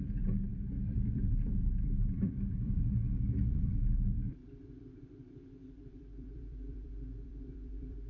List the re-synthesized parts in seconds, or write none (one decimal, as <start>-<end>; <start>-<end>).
0.0-8.1